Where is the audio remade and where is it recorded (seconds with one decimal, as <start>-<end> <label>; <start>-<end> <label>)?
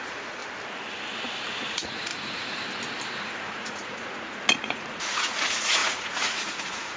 0.0-0.4 remade; 0.4-1.6 recorded; 1.6-2.1 remade; 2.1-3.2 recorded; 3.2-7.0 remade